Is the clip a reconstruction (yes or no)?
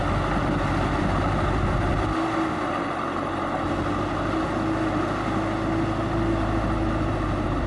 no